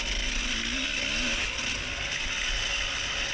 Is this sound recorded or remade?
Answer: recorded